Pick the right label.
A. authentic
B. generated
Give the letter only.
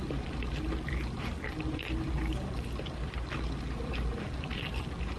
A